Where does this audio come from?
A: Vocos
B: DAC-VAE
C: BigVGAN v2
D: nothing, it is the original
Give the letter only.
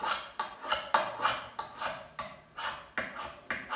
D